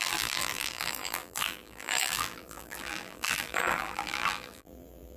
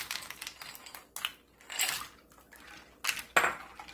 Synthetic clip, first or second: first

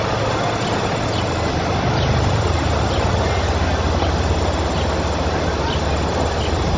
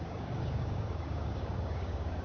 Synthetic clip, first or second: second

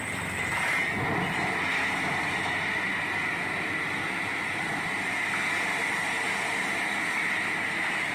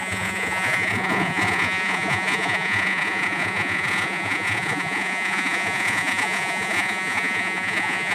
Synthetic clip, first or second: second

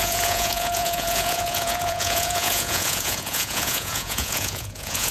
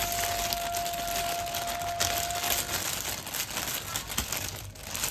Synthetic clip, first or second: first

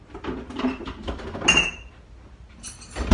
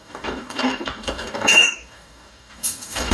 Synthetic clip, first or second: second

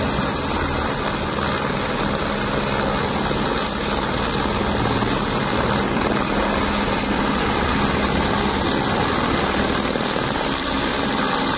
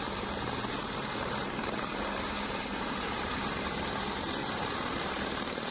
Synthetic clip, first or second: second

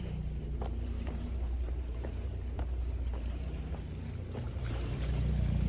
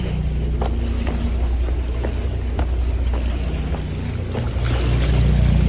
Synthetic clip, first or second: first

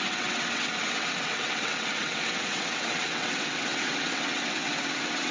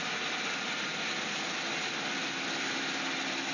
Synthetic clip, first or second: first